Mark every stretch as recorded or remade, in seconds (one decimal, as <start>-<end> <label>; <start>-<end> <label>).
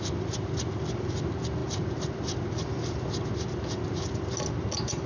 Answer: 0.0-5.1 recorded